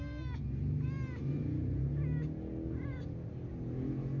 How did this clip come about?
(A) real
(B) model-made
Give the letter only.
A